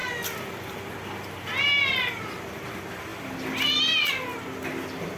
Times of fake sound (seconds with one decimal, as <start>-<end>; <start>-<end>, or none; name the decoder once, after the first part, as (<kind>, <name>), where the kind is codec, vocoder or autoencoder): 0.0-2.2 (vocoder, BigVGAN v2); 3.1-4.1